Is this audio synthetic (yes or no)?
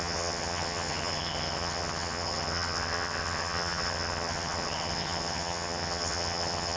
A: yes